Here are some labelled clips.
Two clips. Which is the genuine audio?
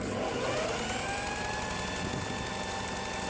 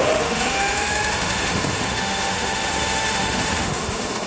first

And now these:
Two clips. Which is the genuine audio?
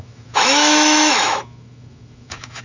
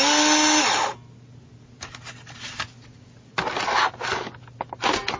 second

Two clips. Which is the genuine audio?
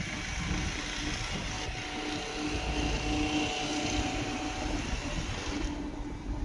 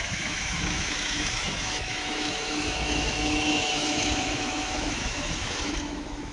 first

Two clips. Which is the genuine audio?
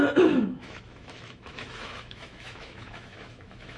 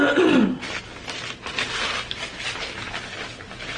second